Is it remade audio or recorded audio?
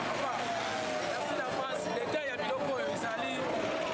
recorded